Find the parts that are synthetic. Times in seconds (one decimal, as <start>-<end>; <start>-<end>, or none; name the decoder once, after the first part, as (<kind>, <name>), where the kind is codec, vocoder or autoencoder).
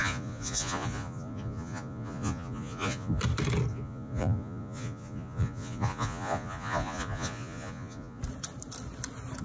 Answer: 0.0-3.2 (vocoder, Vocos); 3.7-8.2